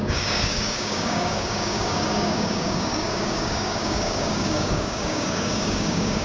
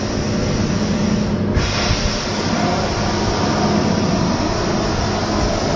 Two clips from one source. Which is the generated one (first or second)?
first